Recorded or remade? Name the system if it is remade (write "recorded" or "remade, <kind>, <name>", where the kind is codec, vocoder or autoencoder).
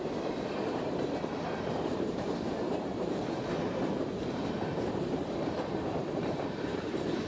remade, vocoder, BigVGAN v2